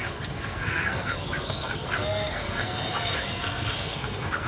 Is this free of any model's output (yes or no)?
no